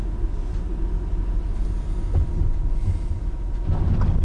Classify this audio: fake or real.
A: real